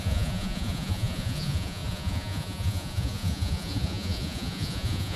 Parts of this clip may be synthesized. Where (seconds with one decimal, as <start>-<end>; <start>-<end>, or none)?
0.0-5.2